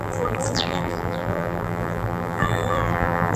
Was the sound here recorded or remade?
remade